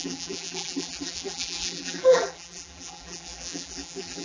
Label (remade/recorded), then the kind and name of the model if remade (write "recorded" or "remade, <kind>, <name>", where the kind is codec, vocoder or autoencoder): remade, vocoder, BigVGAN v2